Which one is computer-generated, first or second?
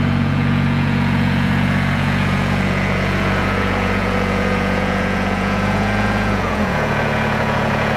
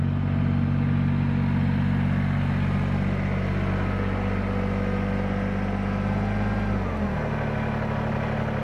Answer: first